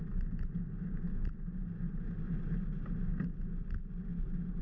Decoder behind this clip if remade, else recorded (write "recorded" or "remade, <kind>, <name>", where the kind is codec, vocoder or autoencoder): recorded